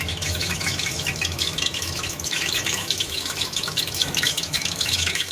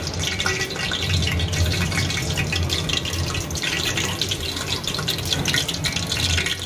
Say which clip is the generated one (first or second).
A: first